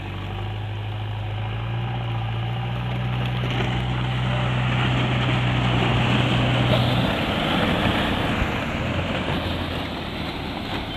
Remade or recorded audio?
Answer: recorded